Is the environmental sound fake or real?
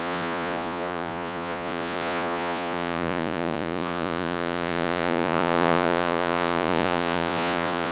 fake